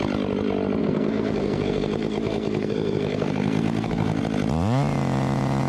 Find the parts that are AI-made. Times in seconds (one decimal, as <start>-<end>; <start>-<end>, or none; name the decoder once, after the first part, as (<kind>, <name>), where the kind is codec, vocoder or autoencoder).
0.8-4.2 (codec, SNAC)

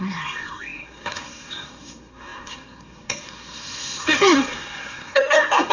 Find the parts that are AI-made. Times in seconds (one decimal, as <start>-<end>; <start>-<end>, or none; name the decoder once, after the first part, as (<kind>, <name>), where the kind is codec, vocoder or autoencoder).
0.0-5.7 (codec, SNAC)

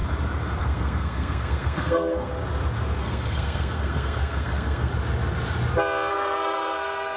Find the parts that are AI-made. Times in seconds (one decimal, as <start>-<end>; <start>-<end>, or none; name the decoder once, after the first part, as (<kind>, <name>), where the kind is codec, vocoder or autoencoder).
0.6-2.3 (codec, SNAC); 3.0-4.9; 6.1-7.2

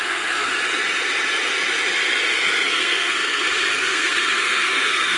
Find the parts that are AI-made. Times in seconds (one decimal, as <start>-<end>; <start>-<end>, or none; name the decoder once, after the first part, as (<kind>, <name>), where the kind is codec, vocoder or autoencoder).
0.0-0.5 (codec, SNAC); 2.7-5.2

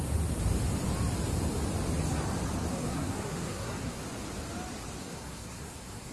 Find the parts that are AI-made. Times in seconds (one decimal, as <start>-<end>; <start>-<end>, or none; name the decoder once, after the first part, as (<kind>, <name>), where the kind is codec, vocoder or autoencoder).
2.7-4.0 (codec, SNAC); 5.0-6.1

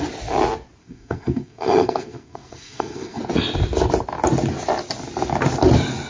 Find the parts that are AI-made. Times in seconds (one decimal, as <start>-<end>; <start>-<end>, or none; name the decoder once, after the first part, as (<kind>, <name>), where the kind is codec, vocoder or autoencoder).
0.8-3.2 (codec, SNAC)

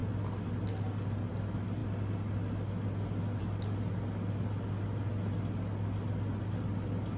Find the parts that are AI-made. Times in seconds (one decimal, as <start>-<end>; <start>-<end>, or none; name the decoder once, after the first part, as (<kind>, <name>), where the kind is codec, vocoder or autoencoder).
none